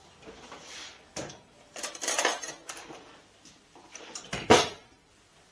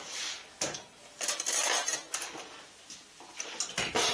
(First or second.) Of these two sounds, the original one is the second